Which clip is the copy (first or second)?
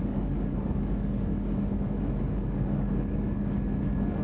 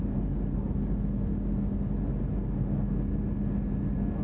first